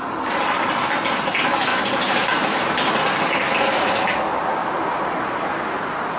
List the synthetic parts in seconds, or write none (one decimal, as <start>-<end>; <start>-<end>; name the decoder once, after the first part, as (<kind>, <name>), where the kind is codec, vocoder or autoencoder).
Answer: 1.7-3.0 (vocoder, BigVGAN v2); 4.6-5.7